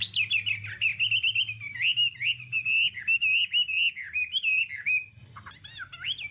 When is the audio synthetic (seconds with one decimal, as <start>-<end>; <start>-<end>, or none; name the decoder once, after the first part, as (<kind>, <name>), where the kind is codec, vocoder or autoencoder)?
none